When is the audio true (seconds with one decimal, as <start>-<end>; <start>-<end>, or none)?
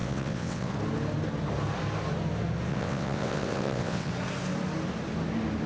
0.7-2.7; 4.1-5.7